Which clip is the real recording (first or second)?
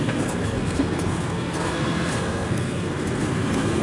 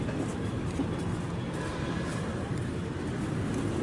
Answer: second